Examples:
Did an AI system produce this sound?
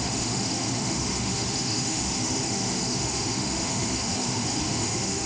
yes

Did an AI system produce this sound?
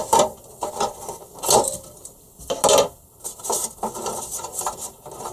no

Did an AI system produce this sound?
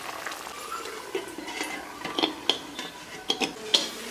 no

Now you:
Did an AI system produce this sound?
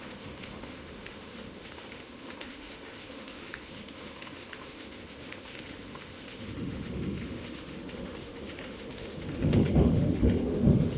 yes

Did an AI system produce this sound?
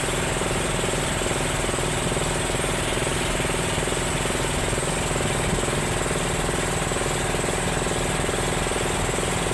no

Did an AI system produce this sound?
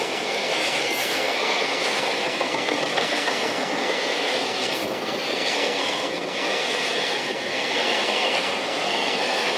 yes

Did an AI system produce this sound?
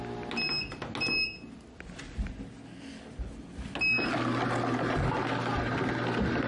no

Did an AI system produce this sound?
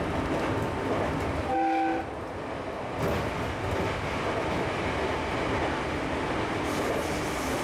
no